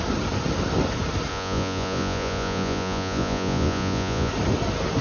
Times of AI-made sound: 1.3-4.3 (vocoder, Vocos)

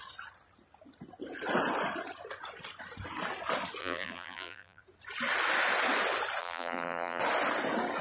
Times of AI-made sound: 3.8-4.8 (vocoder, BigVGAN v2); 6.4-7.2

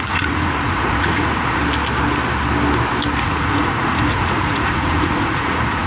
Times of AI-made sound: 0.0-1.6 (vocoder, Vocos); 3.2-5.9

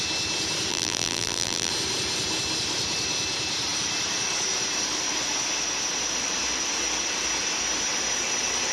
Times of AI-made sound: 0.7-1.7 (vocoder, BigVGAN v2)